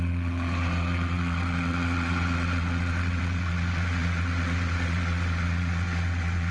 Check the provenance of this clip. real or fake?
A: fake